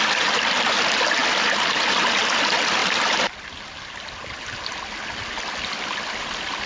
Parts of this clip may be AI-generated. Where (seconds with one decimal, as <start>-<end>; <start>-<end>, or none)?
none